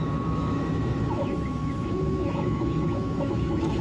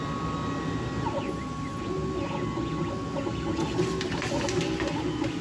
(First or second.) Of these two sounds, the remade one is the first